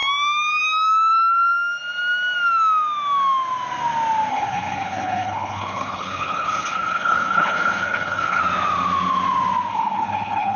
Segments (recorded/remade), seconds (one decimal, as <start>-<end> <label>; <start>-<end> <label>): 0.0-4.3 recorded; 4.3-8.4 remade; 8.4-9.7 recorded; 9.7-10.6 remade